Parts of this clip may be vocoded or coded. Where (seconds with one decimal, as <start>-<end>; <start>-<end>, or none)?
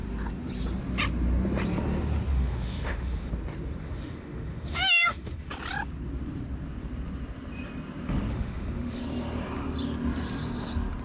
2.3-3.3; 3.8-5.5; 8.3-9.0